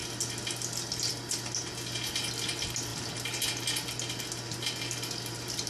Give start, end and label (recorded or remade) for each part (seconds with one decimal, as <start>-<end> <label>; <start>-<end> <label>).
0.0-5.7 recorded